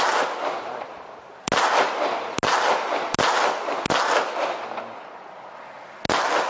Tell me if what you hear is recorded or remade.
recorded